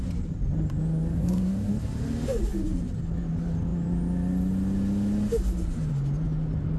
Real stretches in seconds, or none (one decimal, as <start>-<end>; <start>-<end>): 0.0-1.1; 1.7-6.8